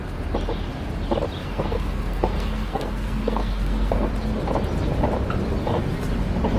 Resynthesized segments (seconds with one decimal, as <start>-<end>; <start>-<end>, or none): 1.4-4.1